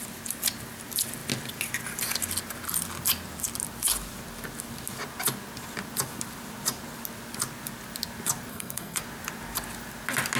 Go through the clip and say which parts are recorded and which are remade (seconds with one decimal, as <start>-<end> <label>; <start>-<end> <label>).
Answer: 0.0-8.5 recorded; 8.5-9.0 remade; 9.0-10.4 recorded